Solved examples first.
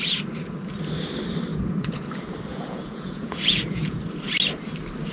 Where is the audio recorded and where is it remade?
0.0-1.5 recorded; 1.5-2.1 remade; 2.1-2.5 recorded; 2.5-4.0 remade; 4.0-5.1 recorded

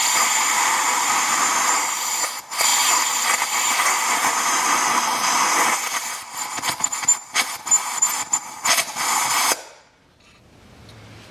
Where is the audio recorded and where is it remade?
0.0-1.8 remade; 1.8-2.7 recorded; 2.7-4.5 remade; 4.5-11.3 recorded